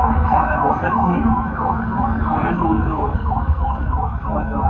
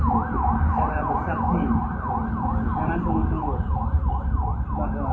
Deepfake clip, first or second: first